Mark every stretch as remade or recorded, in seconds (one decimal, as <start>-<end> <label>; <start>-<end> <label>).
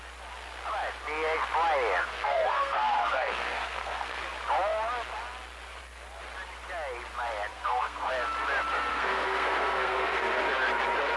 0.0-2.0 recorded; 2.0-4.2 remade; 4.2-7.5 recorded; 7.5-8.1 remade; 8.1-8.9 recorded; 8.9-10.4 remade; 10.4-11.2 recorded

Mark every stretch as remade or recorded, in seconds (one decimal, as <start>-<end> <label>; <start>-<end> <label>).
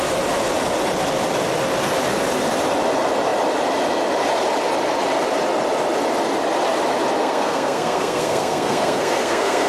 0.0-7.2 recorded; 7.2-9.7 remade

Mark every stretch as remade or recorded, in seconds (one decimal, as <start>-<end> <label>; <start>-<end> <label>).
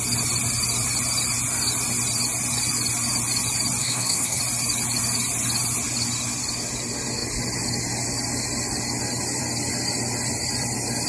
0.0-3.8 recorded; 3.8-4.4 remade; 4.4-11.1 recorded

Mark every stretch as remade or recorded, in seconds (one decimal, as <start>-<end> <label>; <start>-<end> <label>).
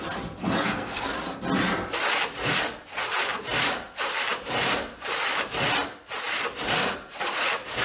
0.0-0.4 recorded; 0.4-1.1 remade; 1.1-7.8 recorded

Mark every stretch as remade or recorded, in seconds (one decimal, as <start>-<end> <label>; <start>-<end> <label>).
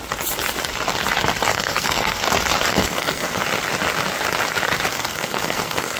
0.0-1.5 recorded; 1.5-2.2 remade; 2.2-2.7 recorded; 2.7-3.4 remade; 3.4-4.9 recorded; 4.9-6.0 remade